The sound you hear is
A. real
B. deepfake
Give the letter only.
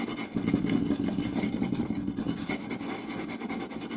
A